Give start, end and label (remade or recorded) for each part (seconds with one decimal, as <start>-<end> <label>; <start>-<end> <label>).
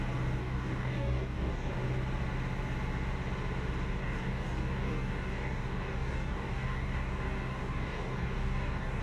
0.0-0.4 recorded; 0.4-1.7 remade; 1.7-4.0 recorded; 4.0-9.0 remade